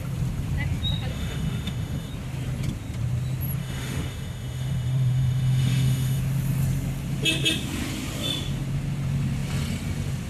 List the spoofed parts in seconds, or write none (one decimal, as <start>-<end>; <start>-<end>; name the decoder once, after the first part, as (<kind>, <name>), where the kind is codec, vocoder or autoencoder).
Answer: 1.1-2.1 (autoencoder, DAC-VAE); 3.6-6.2